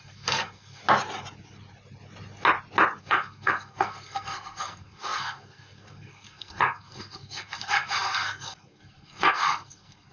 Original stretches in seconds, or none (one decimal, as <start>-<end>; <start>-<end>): 0.8-3.0